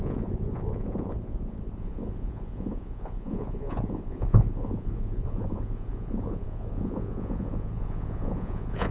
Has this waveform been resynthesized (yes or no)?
yes